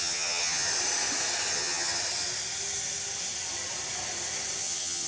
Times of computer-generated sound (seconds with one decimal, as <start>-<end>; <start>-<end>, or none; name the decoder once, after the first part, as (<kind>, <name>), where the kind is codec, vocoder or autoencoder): 0.0-0.7 (vocoder, HiFi-GAN); 1.5-2.0; 4.6-5.1